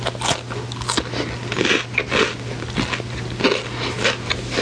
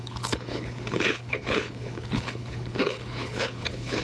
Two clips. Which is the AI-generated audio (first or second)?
second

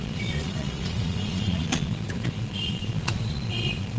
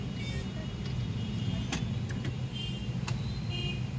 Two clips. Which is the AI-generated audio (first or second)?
first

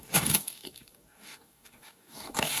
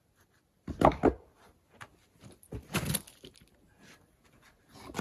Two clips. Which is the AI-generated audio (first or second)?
first